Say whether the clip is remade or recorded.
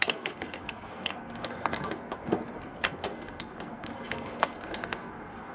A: remade